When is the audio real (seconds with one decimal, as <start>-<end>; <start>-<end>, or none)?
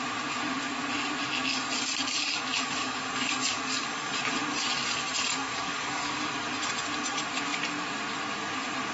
0.0-1.5; 4.2-5.4; 6.1-8.9